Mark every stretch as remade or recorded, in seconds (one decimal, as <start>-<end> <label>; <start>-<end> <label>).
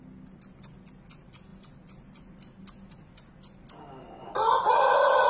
0.0-5.3 recorded